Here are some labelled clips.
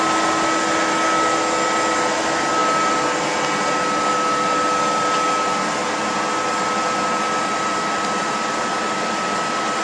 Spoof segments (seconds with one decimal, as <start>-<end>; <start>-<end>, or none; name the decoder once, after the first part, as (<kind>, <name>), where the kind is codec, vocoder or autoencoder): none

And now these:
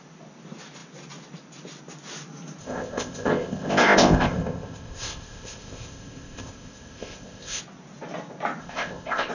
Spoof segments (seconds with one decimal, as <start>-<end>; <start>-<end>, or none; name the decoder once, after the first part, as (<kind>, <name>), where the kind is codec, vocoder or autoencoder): 2.6-7.6 (codec, ZipCodec); 8.6-9.3

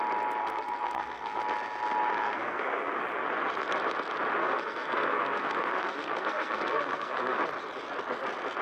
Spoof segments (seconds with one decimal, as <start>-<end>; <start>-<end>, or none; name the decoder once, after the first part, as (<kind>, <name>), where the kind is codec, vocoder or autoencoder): 0.4-1.4 (codec, SNAC); 2.1-3.0; 4.4-7.4